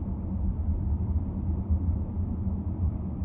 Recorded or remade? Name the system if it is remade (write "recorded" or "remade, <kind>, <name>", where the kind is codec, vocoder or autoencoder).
recorded